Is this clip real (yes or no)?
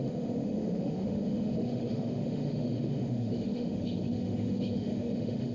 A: no